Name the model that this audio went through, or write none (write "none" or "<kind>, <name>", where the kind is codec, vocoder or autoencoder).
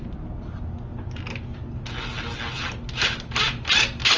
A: none